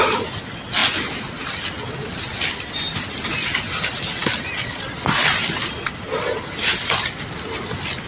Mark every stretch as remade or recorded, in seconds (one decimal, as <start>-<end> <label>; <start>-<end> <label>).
0.0-8.1 recorded